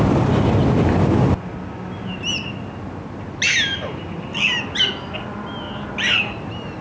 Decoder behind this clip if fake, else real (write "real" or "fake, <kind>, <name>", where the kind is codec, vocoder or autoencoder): real